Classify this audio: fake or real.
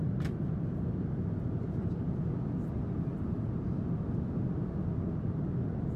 real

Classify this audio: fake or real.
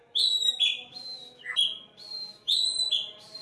real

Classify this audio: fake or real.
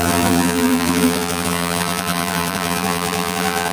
fake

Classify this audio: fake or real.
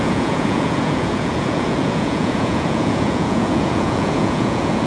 fake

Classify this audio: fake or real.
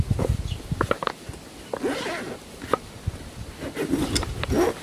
real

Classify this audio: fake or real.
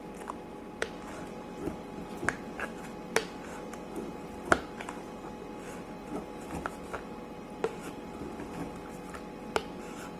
real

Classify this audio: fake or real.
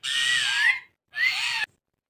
real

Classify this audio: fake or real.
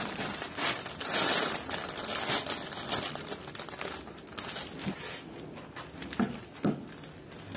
real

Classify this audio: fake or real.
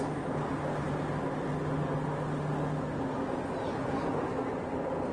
real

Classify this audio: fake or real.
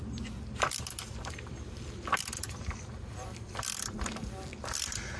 real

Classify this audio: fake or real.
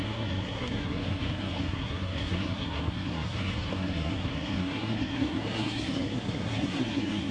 fake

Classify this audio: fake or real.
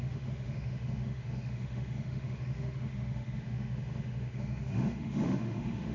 fake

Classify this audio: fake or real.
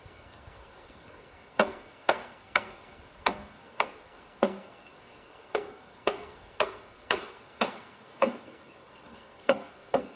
fake